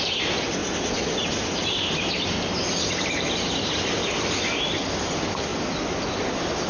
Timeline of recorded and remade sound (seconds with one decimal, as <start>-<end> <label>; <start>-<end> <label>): 0.0-4.0 remade; 4.0-4.9 recorded; 4.9-5.5 remade; 5.5-6.7 recorded

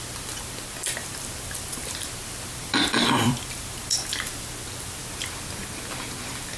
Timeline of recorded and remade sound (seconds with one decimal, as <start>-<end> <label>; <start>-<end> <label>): 0.0-0.8 recorded; 0.8-4.3 remade; 4.3-6.6 recorded

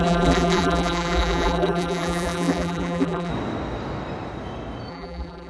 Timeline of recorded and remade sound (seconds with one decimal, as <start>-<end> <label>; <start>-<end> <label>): 0.0-3.3 remade; 3.3-4.9 recorded; 4.9-5.5 remade

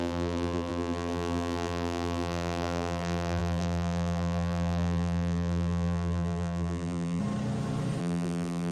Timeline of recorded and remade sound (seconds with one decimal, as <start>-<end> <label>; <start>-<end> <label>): 0.0-7.2 remade; 7.2-8.0 recorded; 8.0-8.7 remade

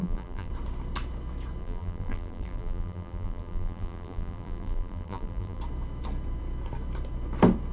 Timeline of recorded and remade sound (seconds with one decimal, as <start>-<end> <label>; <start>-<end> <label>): 0.0-0.5 remade; 0.5-1.6 recorded; 1.6-5.6 remade; 5.6-7.7 recorded